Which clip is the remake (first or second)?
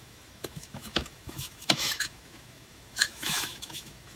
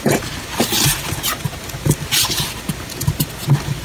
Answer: first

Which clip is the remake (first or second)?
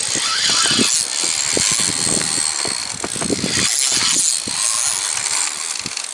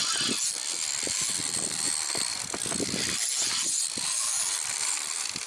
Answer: second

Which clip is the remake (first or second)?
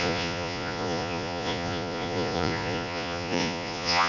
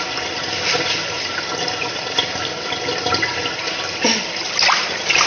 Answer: first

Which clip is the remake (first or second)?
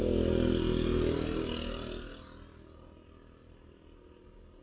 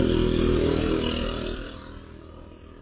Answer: second